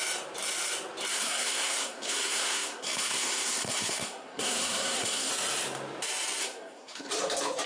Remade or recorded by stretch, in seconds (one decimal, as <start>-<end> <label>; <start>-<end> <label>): 0.0-1.1 recorded; 1.1-5.3 remade; 5.3-6.4 recorded; 6.4-7.1 remade; 7.1-7.7 recorded

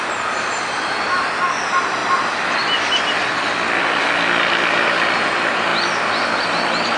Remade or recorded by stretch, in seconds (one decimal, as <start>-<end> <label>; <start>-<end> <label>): 0.0-7.0 recorded

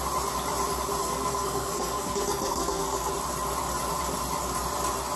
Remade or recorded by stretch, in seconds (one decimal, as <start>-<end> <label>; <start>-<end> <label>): 0.0-1.0 recorded; 1.0-3.1 remade; 3.1-5.2 recorded